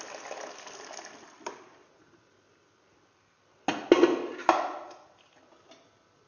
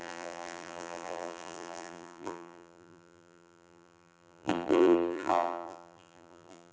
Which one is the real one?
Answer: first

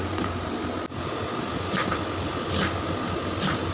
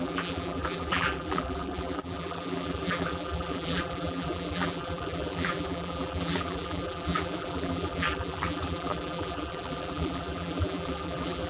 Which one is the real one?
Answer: first